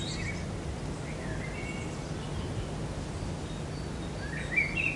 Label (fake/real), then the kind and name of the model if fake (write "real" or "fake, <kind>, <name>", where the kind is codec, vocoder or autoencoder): real